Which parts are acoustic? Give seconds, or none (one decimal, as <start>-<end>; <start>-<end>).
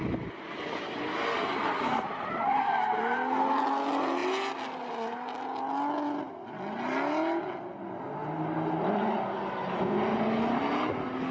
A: 0.0-11.3